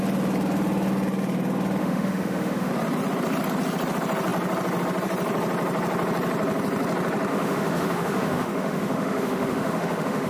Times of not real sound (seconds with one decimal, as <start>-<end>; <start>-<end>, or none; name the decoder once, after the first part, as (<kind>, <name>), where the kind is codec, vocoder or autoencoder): 1.8-2.7 (autoencoder, DAC-VAE); 7.3-10.3